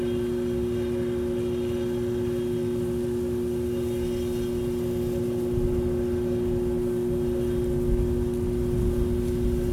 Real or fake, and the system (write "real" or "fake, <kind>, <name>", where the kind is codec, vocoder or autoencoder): real